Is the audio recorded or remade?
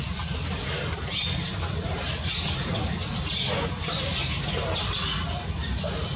recorded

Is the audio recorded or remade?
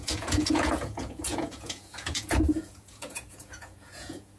remade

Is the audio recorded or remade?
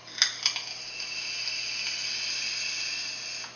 recorded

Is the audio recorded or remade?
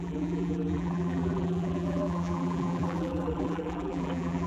remade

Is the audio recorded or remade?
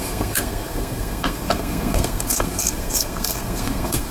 remade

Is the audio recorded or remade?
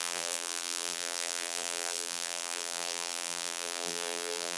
remade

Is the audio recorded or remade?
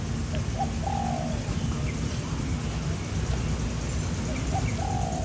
recorded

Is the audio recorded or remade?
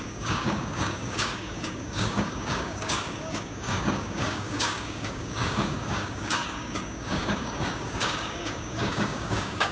remade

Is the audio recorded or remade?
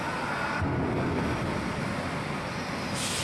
recorded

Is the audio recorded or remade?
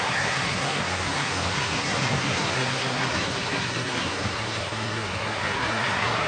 remade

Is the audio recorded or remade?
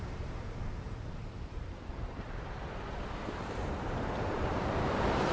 remade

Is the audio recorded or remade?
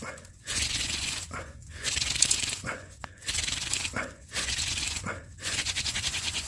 remade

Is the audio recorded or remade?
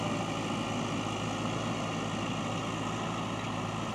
recorded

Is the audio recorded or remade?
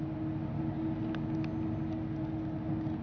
recorded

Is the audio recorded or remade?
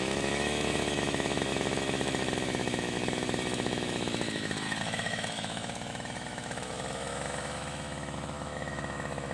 remade